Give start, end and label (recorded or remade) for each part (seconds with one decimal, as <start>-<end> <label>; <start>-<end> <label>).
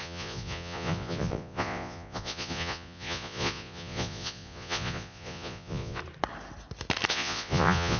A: 0.0-6.0 remade; 6.0-7.1 recorded; 7.1-8.0 remade